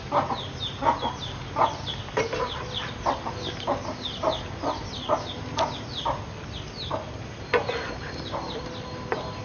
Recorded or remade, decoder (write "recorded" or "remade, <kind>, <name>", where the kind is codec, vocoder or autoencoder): recorded